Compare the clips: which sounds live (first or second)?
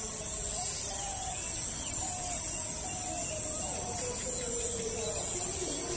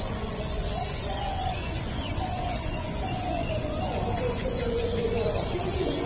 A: first